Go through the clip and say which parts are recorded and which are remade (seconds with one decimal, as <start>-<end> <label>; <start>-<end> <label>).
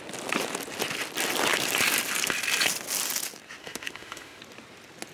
0.0-3.6 recorded; 3.6-4.4 remade; 4.4-5.1 recorded